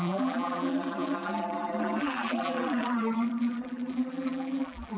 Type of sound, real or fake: fake